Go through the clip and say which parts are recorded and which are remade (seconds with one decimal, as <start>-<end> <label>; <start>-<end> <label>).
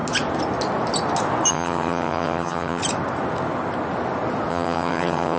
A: 0.0-1.5 recorded; 1.5-2.8 remade; 2.8-4.5 recorded; 4.5-5.4 remade